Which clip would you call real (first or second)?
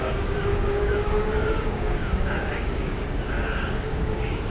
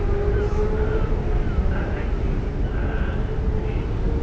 second